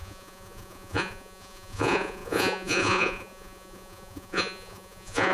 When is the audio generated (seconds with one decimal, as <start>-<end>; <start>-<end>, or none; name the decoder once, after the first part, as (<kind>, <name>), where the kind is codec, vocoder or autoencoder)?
0.0-5.3 (vocoder, Vocos)